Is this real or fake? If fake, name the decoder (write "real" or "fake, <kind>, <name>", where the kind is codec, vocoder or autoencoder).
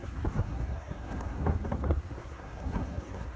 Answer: fake, codec, SNAC